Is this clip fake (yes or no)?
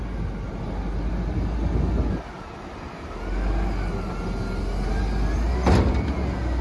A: no